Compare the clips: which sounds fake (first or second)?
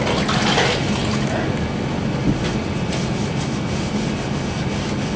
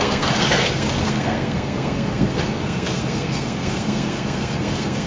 second